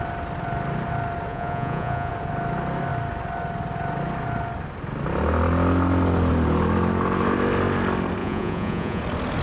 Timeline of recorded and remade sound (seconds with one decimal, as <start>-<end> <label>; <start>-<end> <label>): 0.0-1.3 recorded; 1.3-2.1 remade; 2.1-8.2 recorded; 8.2-9.0 remade; 9.0-9.4 recorded